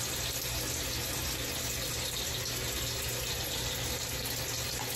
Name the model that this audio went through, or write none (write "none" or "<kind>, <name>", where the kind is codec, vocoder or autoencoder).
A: none